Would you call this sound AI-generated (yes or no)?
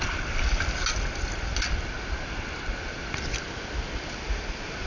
no